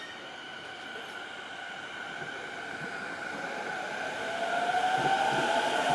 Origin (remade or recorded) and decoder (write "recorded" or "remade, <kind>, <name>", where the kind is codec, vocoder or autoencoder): recorded